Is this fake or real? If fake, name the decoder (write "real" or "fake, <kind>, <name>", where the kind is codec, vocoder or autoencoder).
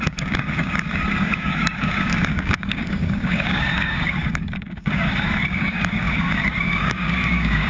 fake, codec, DAC